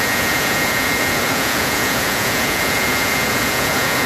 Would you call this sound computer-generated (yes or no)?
yes